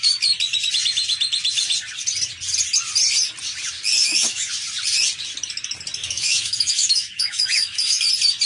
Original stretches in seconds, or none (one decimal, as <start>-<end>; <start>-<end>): 0.0-4.0; 4.5-6.0; 8.1-8.5